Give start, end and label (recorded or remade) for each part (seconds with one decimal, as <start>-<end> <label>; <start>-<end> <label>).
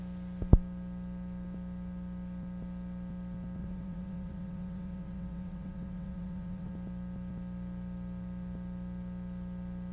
0.0-3.6 recorded; 3.6-6.7 remade; 6.7-9.9 recorded